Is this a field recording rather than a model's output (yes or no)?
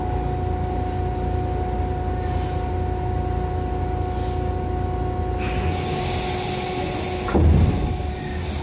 yes